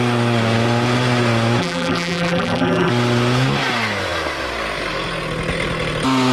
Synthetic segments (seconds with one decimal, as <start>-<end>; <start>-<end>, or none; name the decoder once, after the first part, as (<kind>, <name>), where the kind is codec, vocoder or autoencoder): 1.6-2.9 (vocoder, BigVGAN v2)